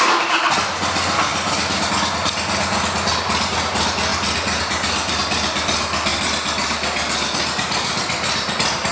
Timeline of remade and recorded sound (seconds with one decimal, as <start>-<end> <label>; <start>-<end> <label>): 0.0-1.3 recorded; 1.3-1.9 remade; 1.9-4.1 recorded; 4.1-5.1 remade; 5.1-6.1 recorded; 6.1-8.5 remade; 8.5-8.9 recorded

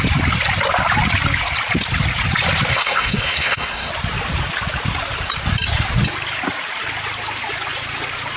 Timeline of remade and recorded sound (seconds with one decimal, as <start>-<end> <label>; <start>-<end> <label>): 0.0-2.7 recorded; 2.7-3.9 remade; 3.9-8.4 recorded

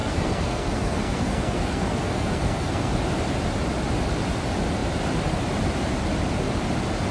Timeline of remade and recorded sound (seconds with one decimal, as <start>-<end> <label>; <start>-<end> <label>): 0.0-2.9 remade; 2.9-7.1 recorded

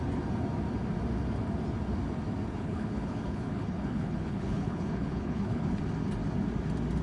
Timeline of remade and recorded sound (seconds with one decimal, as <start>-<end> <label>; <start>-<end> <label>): 0.0-2.5 recorded; 2.5-5.8 remade; 5.8-7.0 recorded

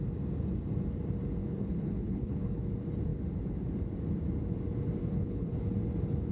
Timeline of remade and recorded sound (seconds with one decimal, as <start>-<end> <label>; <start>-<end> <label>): 0.0-1.4 recorded; 1.4-2.6 remade; 2.6-5.0 recorded; 5.0-5.6 remade; 5.6-6.3 recorded

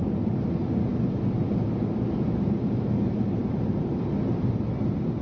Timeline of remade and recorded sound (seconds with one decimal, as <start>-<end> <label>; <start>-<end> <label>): 0.0-5.2 recorded

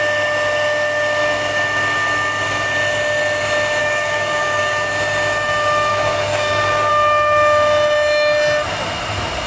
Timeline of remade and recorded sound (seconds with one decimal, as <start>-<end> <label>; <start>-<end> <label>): 0.0-3.8 recorded; 3.8-4.9 remade; 4.9-5.9 recorded; 5.9-6.9 remade; 6.9-9.5 recorded